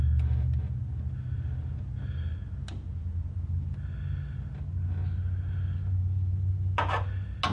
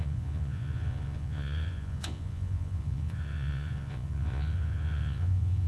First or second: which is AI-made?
second